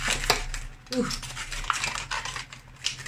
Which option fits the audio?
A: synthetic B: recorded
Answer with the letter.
B